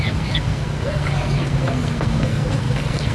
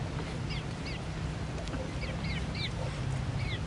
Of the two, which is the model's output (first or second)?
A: first